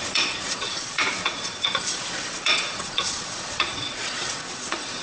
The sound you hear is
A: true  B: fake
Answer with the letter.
B